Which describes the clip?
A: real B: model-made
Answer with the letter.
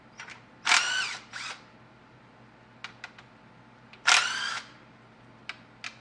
A